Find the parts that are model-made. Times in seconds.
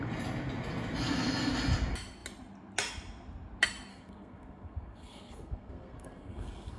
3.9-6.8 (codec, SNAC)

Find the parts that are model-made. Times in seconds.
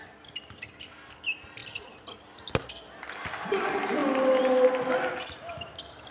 none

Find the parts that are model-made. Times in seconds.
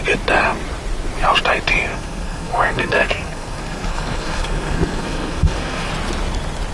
1.9-5.9 (codec, SNAC)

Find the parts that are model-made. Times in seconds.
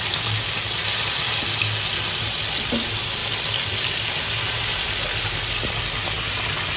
none